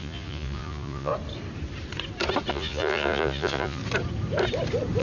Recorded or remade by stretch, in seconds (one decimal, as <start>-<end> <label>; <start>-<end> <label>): 0.0-1.1 remade; 1.1-2.5 recorded; 2.5-3.8 remade; 3.8-5.0 recorded